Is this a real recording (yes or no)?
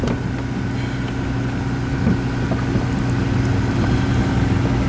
yes